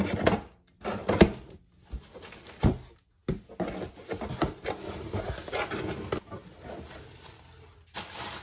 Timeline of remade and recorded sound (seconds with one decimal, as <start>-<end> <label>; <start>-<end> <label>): 0.0-8.4 recorded